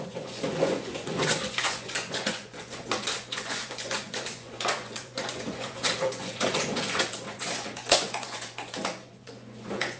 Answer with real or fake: fake